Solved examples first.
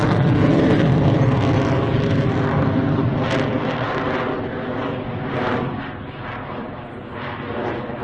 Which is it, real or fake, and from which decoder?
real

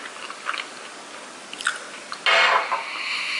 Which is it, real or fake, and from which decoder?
real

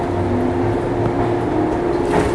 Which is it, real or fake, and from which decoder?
real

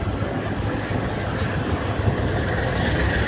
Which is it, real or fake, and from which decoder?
real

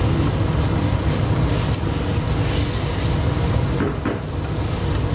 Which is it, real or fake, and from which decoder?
real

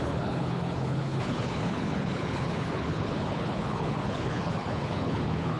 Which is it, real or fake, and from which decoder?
fake, codec, HILCodec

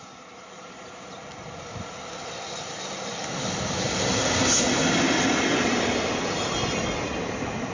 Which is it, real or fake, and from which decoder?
real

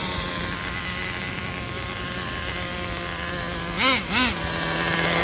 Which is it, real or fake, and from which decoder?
real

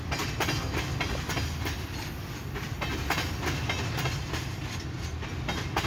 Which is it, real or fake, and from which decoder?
real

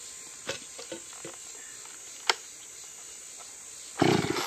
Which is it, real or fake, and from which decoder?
real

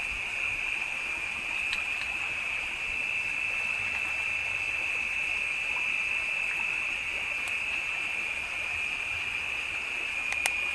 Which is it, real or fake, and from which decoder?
real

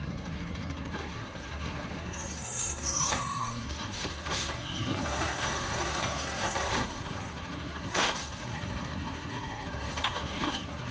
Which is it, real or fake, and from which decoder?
fake, codec, SNAC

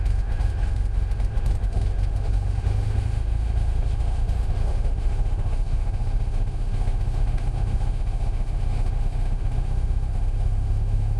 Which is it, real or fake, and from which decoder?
fake, autoencoder, DAC-VAE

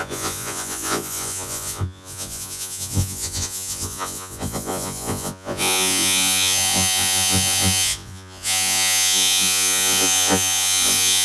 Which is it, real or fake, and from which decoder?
fake, vocoder, Vocos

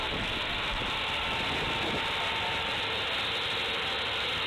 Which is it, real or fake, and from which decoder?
real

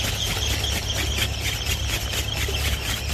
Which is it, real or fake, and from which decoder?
real